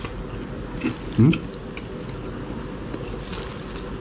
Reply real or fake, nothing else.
real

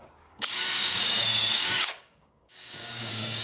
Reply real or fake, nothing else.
fake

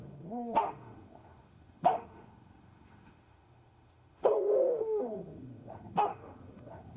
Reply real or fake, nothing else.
fake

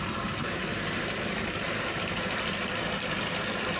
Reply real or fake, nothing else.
real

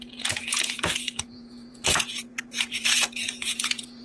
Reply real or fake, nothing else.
fake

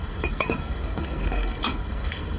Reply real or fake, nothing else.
fake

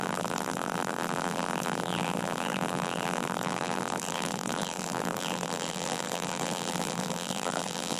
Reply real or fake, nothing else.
fake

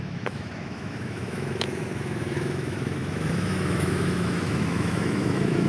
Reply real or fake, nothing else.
fake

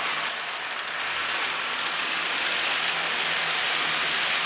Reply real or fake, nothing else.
real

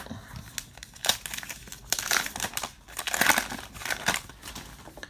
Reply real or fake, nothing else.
real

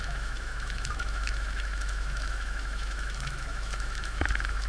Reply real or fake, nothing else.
fake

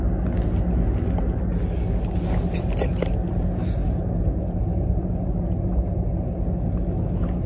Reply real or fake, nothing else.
real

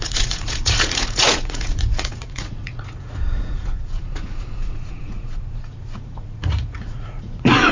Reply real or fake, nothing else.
fake